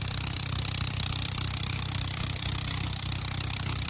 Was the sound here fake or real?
fake